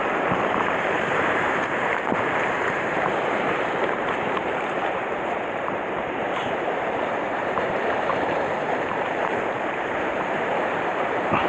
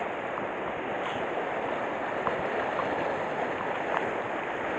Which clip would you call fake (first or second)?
first